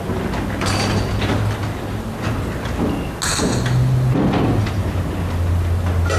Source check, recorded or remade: recorded